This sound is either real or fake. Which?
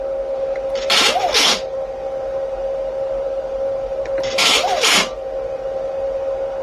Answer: real